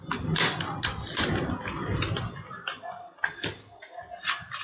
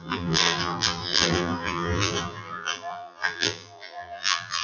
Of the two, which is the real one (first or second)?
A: first